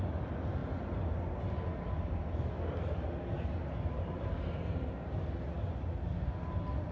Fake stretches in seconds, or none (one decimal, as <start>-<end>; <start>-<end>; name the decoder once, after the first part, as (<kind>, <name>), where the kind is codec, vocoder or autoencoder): none